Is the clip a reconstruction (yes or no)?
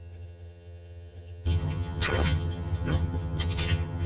yes